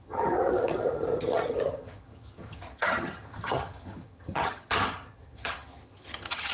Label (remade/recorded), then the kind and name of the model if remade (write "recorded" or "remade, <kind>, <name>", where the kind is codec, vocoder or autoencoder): remade, vocoder, HiFi-GAN